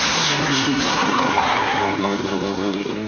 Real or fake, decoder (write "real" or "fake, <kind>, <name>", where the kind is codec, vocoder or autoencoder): fake, codec, SNAC